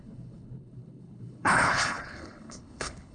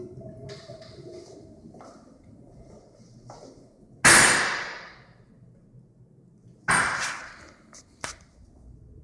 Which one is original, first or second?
second